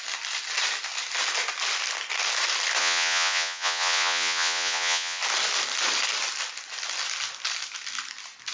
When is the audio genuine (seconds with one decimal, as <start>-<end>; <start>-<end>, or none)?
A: 0.0-2.8; 5.2-8.5